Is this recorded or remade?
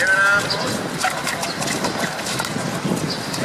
recorded